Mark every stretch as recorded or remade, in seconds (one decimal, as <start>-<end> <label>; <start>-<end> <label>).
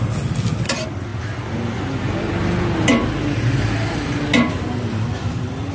0.0-1.1 remade; 1.1-4.5 recorded; 4.5-5.7 remade